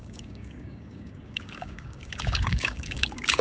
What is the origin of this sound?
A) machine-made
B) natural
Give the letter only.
A